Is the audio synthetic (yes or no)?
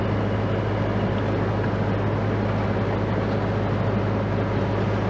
no